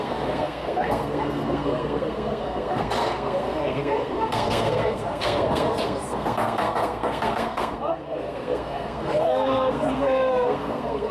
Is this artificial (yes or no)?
yes